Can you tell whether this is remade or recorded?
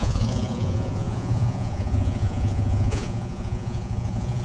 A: remade